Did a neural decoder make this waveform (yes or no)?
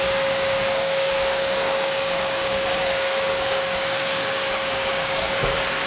yes